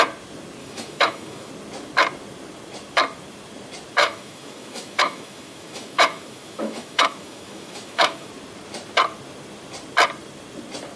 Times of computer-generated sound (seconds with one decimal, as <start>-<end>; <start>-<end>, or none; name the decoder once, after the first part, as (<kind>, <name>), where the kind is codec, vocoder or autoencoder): 0.6-1.5 (autoencoder, DAC-VAE); 4.0-8.3